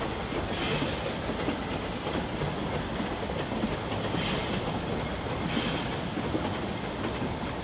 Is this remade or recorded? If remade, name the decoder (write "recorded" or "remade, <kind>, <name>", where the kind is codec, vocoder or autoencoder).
recorded